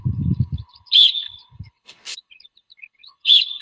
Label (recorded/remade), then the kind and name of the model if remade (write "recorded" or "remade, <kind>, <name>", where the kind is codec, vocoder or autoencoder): remade, codec, HILCodec